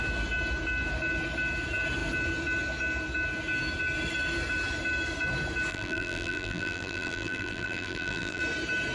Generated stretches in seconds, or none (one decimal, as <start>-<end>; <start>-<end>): 5.7-8.4